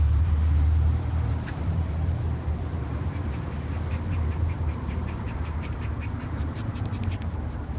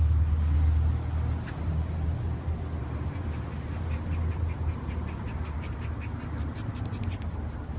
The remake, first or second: first